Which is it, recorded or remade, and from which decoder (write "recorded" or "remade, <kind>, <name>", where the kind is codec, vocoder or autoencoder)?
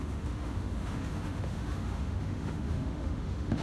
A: remade, autoencoder, DAC-VAE